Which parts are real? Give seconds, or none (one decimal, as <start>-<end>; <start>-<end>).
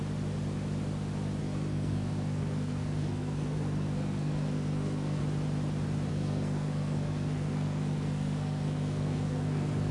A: 0.0-1.4; 5.2-6.1